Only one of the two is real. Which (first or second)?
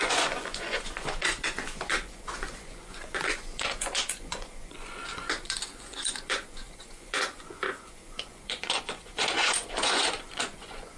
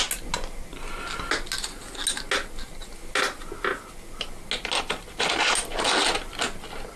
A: second